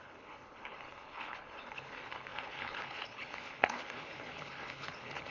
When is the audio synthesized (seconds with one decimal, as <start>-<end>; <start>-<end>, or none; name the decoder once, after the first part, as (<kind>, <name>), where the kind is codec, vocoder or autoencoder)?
0.0-5.3 (codec, HILCodec)